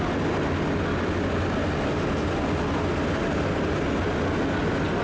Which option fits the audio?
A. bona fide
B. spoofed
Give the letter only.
A